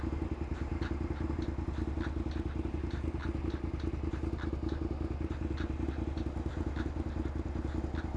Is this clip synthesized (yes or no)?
no